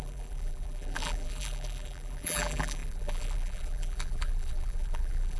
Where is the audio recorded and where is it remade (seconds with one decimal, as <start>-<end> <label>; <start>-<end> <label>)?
0.0-5.4 remade

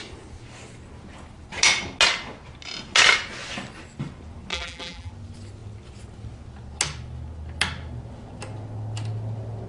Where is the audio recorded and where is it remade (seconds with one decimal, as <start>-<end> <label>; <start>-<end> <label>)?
0.0-4.5 recorded; 4.5-5.1 remade; 5.1-9.7 recorded

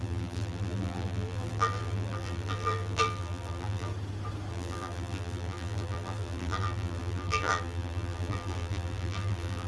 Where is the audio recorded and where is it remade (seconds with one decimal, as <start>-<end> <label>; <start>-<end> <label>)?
0.0-3.9 remade; 3.9-4.5 recorded; 4.5-9.7 remade

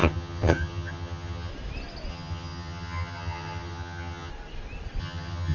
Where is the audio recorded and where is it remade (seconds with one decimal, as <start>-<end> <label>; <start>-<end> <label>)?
0.0-1.5 remade; 1.5-2.1 recorded; 2.1-4.3 remade; 4.3-5.0 recorded; 5.0-5.5 remade

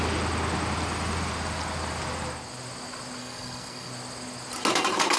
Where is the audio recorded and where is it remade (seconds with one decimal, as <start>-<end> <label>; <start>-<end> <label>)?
0.0-3.2 recorded; 3.2-3.9 remade; 3.9-5.2 recorded

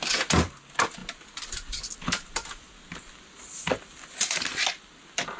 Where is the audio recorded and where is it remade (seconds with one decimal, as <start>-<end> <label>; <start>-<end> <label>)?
0.0-5.4 recorded

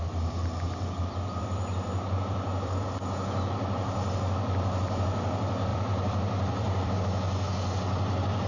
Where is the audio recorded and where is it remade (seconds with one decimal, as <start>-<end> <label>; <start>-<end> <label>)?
0.0-0.4 recorded; 0.4-2.9 remade; 2.9-5.7 recorded; 5.7-7.0 remade; 7.0-8.5 recorded